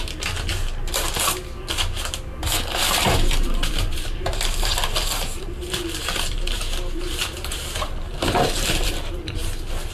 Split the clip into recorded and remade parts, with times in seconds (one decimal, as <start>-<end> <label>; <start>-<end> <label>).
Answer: 0.0-2.8 recorded; 2.8-6.6 remade; 6.6-8.0 recorded; 8.0-9.1 remade; 9.1-9.9 recorded